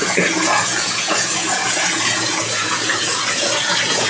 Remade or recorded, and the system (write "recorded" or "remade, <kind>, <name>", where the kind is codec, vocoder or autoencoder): remade, vocoder, Vocos